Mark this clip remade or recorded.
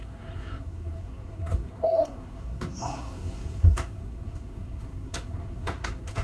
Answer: remade